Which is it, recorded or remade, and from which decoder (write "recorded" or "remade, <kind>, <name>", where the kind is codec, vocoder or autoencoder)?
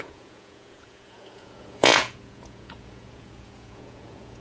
remade, vocoder, Vocos